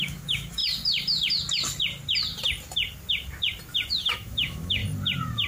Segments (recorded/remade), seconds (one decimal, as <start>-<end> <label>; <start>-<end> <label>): 0.0-0.6 remade; 0.6-3.9 recorded; 3.9-4.8 remade; 4.8-5.5 recorded